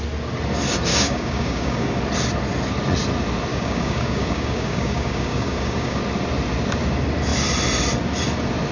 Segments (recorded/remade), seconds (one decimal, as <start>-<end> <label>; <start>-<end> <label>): 0.0-0.9 recorded; 0.9-2.0 remade; 2.0-3.5 recorded; 3.5-6.0 remade; 6.0-8.7 recorded